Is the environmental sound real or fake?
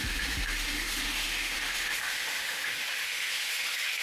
fake